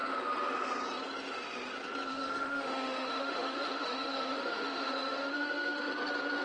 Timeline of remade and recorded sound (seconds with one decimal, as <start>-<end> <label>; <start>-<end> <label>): 0.0-2.1 recorded; 2.1-5.9 remade; 5.9-6.4 recorded